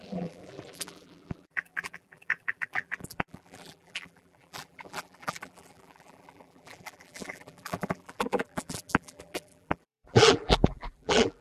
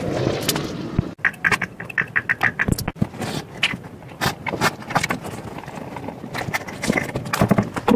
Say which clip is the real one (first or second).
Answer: second